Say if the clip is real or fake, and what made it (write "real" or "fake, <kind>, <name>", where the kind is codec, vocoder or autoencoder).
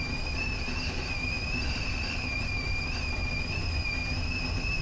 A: real